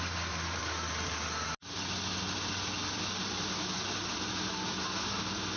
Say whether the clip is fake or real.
real